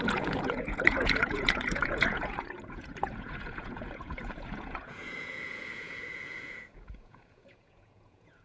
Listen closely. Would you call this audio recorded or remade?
remade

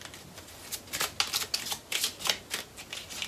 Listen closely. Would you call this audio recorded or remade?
recorded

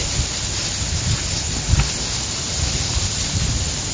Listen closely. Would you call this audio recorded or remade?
recorded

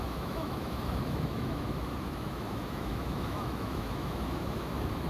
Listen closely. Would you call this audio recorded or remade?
remade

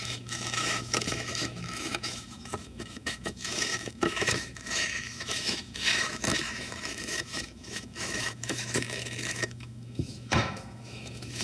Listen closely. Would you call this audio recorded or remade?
remade